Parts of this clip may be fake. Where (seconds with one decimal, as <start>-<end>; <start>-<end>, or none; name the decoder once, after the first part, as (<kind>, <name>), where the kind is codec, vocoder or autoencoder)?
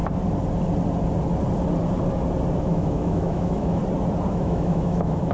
2.6-3.8 (autoencoder, DAC-VAE); 4.3-5.3